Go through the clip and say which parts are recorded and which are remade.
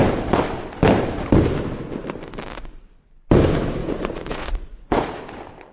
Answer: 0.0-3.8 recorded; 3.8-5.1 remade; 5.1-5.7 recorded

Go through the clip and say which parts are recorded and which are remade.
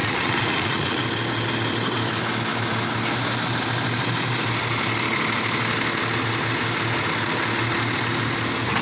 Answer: 0.0-1.0 remade; 1.0-8.8 recorded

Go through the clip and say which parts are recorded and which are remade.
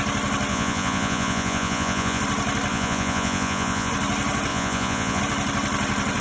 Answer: 0.0-0.5 recorded; 0.5-2.2 remade; 2.2-2.7 recorded; 2.7-3.9 remade; 3.9-4.5 recorded; 4.5-5.2 remade; 5.2-6.2 recorded